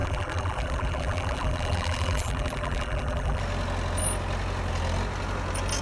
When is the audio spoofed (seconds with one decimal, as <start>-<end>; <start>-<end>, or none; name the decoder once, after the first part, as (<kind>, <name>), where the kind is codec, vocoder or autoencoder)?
0.0-3.4 (vocoder, BigVGAN v2)